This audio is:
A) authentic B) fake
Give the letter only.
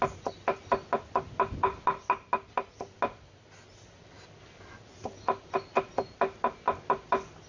A